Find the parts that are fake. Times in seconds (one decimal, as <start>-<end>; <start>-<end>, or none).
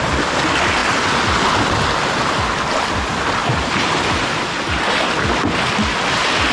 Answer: 3.4-5.0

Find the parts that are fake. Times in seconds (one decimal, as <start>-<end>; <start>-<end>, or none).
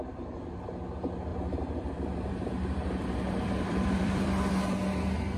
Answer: 1.3-4.5